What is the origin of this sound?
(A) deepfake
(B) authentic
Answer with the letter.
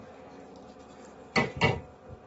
B